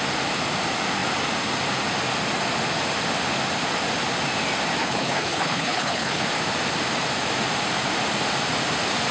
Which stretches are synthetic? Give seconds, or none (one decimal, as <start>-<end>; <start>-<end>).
4.8-6.2